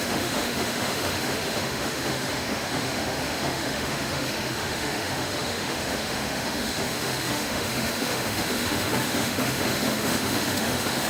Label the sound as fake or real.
fake